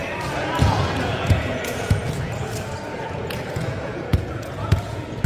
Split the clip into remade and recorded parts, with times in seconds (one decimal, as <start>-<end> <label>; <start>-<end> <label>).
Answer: 0.0-0.6 recorded; 0.6-5.3 remade